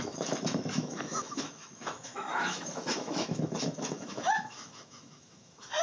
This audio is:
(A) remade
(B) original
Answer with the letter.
A